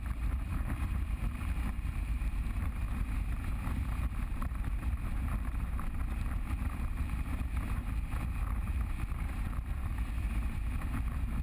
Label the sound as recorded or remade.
remade